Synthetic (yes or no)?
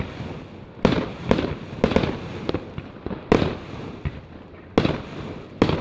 no